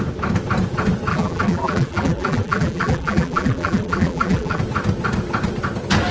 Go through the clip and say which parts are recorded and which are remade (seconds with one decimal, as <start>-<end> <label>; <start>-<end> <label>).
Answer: 0.0-1.1 recorded; 1.1-4.6 remade; 4.6-6.1 recorded